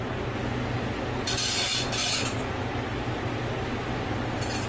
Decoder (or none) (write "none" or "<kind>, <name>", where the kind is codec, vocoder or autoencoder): none